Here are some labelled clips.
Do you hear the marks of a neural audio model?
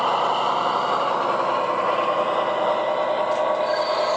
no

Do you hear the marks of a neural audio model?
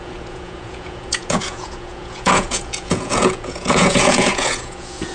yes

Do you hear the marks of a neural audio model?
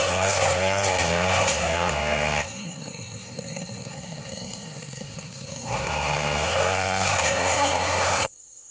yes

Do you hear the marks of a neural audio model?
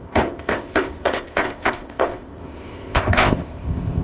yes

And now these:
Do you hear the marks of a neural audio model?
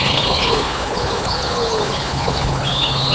yes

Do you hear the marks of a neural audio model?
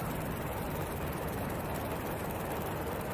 yes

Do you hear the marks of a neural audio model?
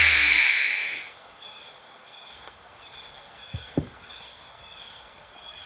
yes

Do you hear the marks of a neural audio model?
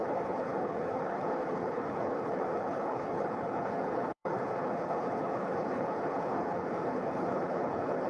yes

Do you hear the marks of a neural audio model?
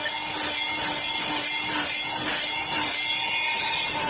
no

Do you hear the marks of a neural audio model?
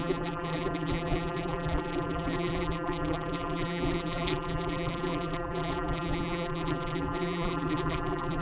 yes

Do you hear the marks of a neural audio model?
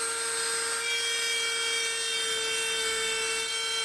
no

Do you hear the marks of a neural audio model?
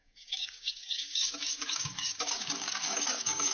yes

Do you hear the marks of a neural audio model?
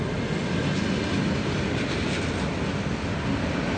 no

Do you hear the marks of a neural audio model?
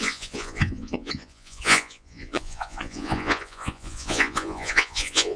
yes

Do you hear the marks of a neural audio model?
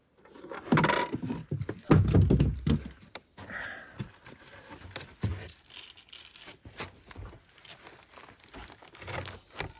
no